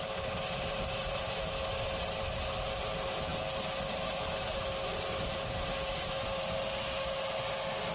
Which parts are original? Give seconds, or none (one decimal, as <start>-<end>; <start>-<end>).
0.0-7.9